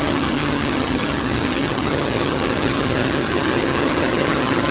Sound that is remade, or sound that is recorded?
remade